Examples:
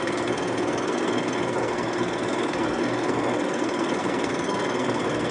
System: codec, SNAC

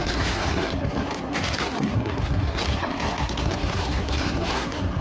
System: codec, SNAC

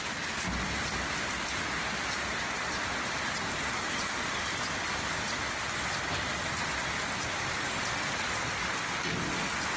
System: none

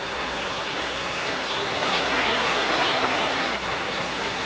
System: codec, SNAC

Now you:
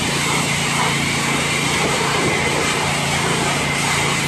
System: none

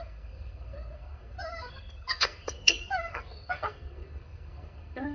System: codec, SNAC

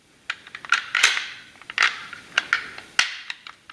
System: none